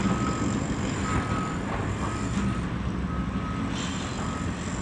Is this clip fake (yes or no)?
no